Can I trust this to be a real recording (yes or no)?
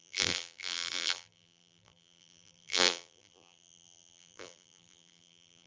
no